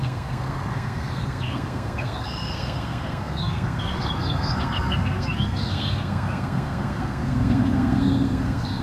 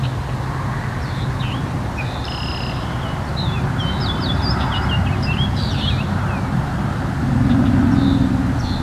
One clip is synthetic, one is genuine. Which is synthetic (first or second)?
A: first